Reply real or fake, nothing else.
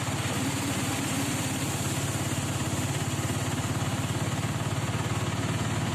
real